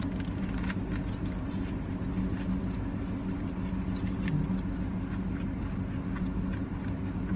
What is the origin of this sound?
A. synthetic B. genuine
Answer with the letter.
B